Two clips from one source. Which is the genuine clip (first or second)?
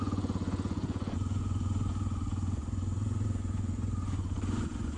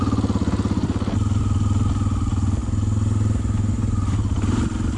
second